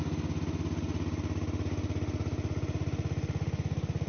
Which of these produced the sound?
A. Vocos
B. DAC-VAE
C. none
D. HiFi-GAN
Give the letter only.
C